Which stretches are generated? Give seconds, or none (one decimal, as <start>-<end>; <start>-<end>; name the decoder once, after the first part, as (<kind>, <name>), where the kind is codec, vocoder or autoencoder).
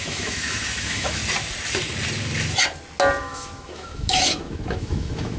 0.0-1.2 (autoencoder, DAC-VAE); 3.2-5.4